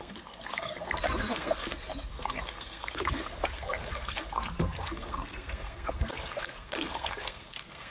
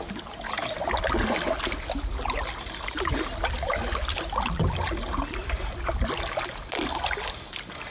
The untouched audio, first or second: second